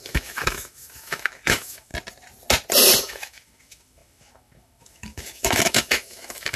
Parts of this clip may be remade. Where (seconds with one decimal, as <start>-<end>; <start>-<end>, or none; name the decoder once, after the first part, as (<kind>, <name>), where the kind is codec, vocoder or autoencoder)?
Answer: 0.0-1.9 (autoencoder, DAC-VAE); 3.0-6.6